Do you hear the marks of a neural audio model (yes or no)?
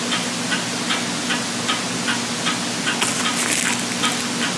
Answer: no